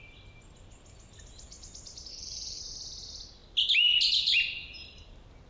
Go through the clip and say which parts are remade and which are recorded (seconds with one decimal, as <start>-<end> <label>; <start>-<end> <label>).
0.0-2.1 recorded; 2.1-2.6 remade; 2.6-5.5 recorded